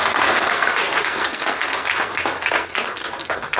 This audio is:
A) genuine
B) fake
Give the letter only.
B